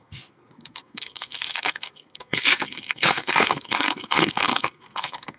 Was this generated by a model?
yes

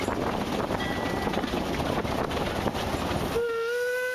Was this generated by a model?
no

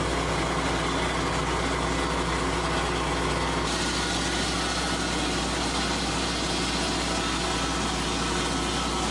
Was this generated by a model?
no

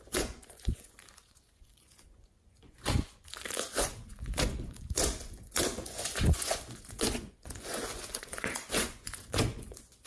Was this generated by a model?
yes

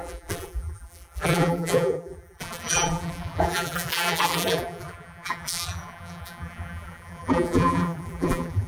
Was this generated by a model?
yes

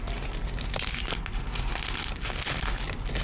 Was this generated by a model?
no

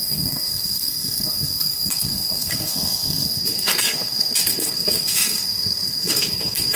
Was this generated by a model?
yes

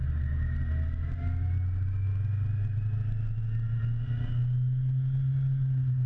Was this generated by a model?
no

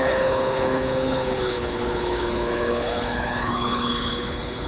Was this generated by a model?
yes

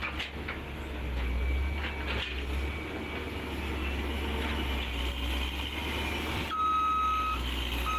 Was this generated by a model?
no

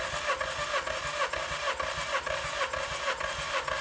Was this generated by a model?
no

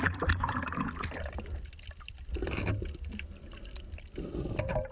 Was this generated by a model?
no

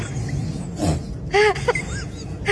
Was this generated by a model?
no